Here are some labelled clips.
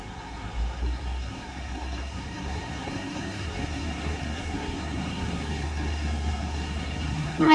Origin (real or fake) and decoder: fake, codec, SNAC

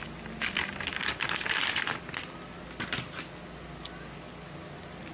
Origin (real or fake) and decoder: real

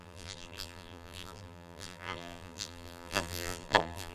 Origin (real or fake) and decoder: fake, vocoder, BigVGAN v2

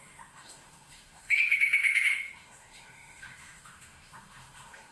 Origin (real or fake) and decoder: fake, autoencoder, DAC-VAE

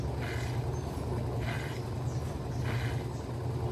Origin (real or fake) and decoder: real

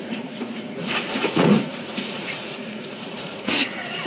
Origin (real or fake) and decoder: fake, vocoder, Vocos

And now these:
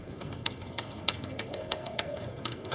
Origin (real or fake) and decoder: fake, codec, SNAC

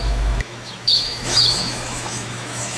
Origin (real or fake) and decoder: fake, autoencoder, DAC-VAE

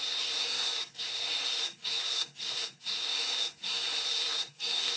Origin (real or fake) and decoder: fake, codec, SNAC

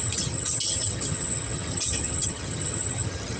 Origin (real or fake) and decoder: fake, vocoder, HiFi-GAN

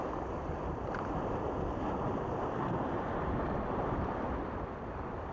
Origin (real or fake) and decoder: real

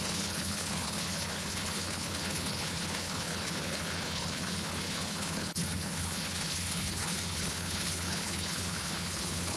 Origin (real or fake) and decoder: fake, codec, HILCodec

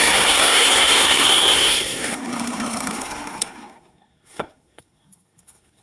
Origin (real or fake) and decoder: fake, codec, SNAC